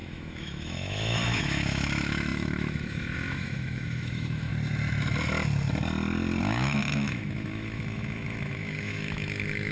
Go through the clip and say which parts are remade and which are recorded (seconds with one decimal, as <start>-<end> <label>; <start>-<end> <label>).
0.0-4.5 remade; 4.5-6.4 recorded; 6.4-9.7 remade